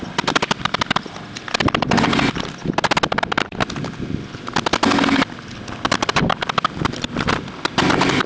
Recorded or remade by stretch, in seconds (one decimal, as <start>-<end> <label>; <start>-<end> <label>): 0.0-2.6 remade; 2.6-3.2 recorded; 3.2-8.3 remade